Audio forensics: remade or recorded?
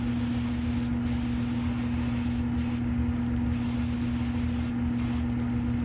recorded